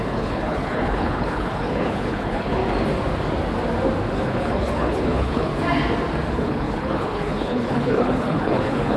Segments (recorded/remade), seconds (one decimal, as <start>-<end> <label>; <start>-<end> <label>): 0.0-2.6 remade; 2.6-4.1 recorded; 4.1-5.5 remade; 5.5-6.3 recorded; 6.3-9.0 remade